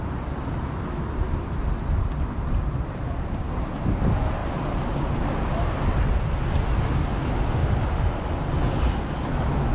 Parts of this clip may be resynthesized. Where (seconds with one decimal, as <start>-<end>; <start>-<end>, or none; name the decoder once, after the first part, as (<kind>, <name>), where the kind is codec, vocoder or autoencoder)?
none